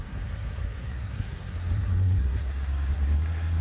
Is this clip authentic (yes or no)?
no